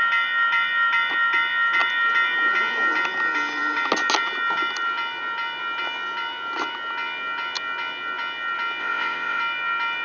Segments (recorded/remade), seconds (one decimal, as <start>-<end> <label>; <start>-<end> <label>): 0.0-8.8 recorded; 8.8-9.4 remade; 9.4-10.0 recorded